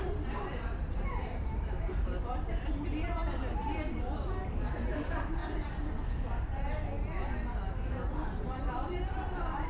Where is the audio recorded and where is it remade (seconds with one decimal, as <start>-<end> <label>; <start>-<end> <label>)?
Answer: 0.0-5.4 remade; 5.4-8.1 recorded; 8.1-9.7 remade